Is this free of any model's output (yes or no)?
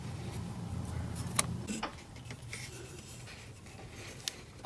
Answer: yes